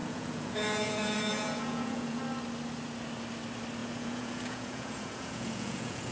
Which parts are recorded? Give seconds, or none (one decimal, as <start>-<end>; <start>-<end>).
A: 2.2-3.8